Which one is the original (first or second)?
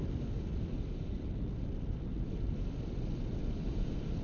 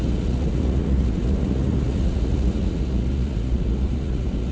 first